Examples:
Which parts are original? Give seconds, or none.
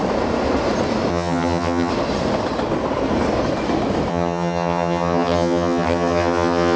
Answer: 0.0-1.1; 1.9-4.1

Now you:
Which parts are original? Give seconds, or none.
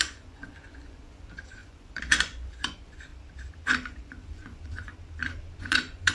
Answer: 3.1-3.9; 4.9-5.6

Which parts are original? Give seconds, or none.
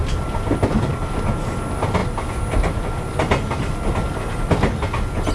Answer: 0.0-5.3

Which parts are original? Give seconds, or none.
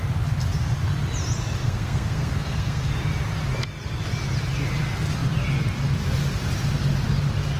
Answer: 0.0-1.6; 2.9-7.6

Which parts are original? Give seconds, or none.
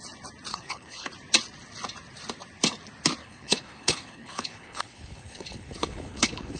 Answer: 0.0-0.5; 1.1-3.2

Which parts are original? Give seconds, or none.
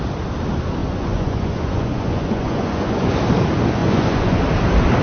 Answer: 0.0-0.8; 3.2-3.8; 4.4-5.0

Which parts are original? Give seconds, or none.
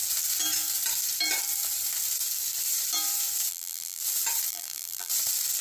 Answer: 0.0-3.5; 4.0-4.5; 5.1-5.6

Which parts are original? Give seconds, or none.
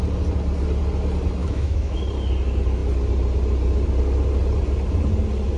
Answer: 0.0-1.4; 2.0-5.6